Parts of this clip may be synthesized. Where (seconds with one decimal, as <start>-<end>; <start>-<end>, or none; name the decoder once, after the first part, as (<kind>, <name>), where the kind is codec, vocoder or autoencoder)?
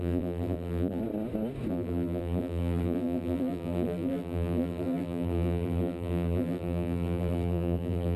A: 0.0-1.0 (vocoder, BigVGAN v2); 1.7-8.2